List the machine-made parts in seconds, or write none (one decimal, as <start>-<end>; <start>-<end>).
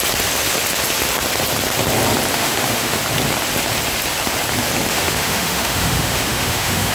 2.3-3.0; 4.9-6.9